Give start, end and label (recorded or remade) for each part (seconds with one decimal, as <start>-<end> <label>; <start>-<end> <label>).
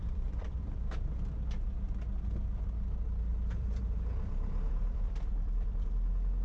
0.0-0.6 remade; 0.6-3.3 recorded; 3.3-5.9 remade; 5.9-6.4 recorded